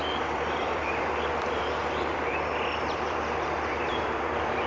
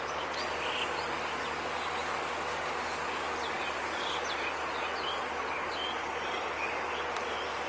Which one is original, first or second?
second